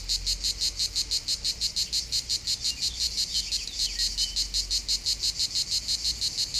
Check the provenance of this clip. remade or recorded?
recorded